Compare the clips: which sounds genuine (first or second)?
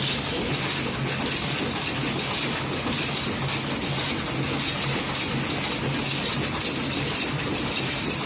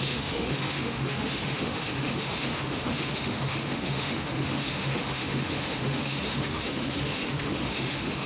first